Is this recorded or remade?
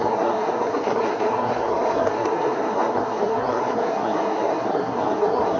remade